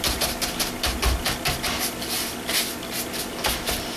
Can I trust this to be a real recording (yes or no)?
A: yes